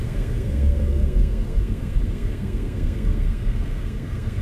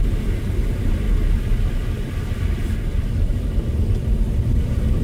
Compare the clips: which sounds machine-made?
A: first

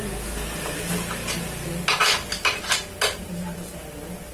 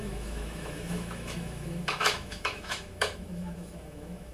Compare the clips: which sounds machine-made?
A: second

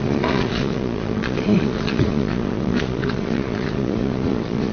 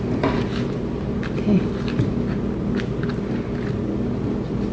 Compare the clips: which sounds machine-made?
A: first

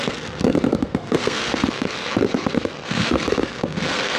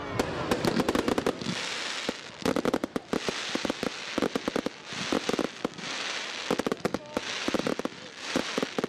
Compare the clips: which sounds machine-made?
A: first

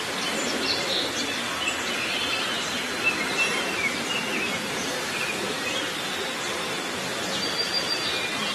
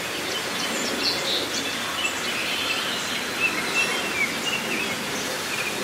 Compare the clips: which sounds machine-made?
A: first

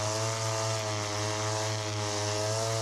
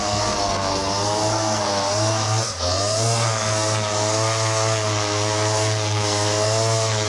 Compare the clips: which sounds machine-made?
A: second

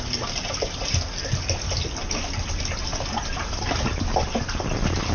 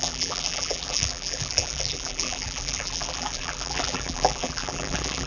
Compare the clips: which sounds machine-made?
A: second